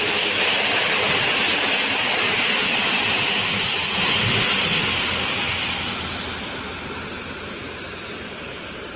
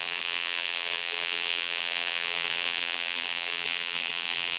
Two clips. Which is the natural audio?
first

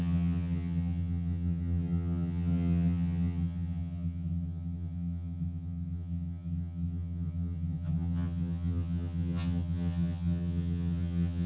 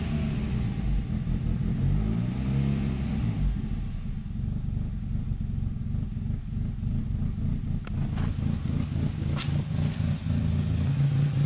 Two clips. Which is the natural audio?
second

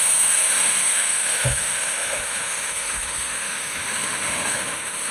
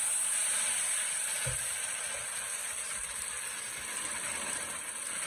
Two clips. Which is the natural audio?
second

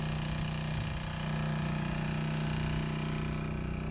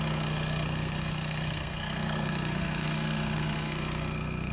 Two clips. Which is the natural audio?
first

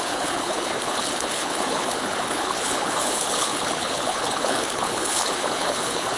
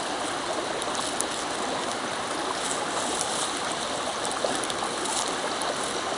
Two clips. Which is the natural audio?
second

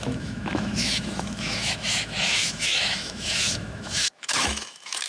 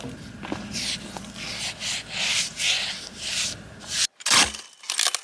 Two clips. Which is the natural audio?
second